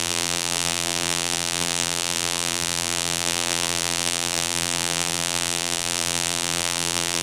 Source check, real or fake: fake